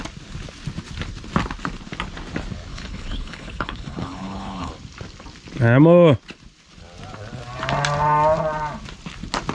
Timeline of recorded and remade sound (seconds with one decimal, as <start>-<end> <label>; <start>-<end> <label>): 0.0-2.7 recorded; 2.7-4.7 remade; 4.7-9.5 recorded